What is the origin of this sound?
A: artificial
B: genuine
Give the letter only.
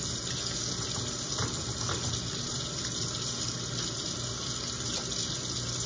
B